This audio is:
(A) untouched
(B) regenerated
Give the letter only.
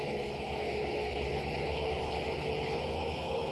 B